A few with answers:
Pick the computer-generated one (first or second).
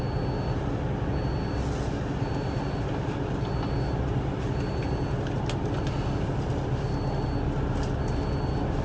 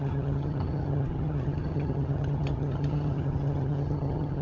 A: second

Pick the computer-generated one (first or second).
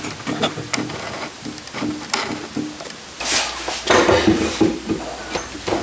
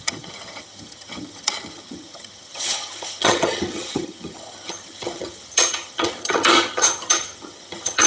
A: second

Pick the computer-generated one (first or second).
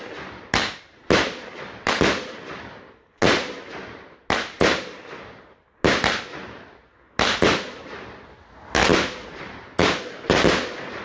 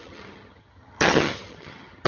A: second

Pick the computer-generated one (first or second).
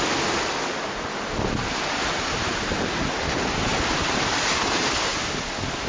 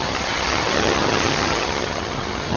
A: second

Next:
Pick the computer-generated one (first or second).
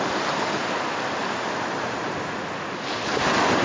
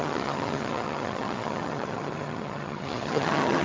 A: second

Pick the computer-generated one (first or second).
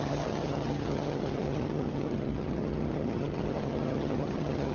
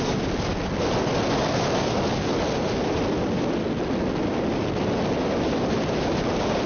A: first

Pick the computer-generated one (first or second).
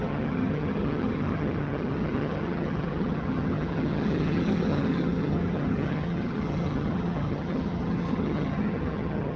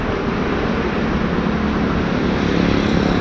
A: first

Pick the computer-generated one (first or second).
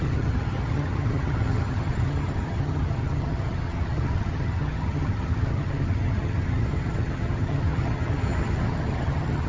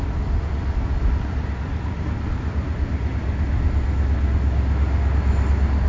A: first